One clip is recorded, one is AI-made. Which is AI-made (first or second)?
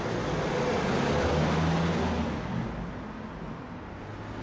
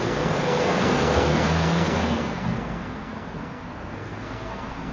second